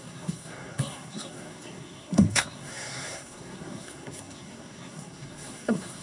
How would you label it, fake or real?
fake